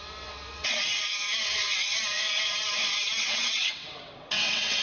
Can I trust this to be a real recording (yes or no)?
no